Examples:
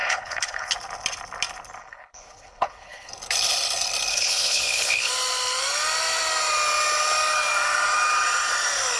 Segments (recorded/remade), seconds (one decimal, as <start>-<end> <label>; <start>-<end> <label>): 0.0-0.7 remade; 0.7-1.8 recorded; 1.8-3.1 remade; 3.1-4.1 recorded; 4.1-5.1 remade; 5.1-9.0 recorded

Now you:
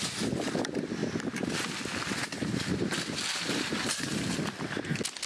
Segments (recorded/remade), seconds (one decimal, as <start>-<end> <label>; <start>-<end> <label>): 0.0-5.3 recorded

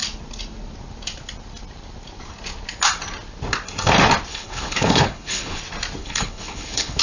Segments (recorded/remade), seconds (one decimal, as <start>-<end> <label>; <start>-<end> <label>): 0.0-4.3 recorded; 4.3-5.6 remade; 5.6-6.0 recorded; 6.0-7.0 remade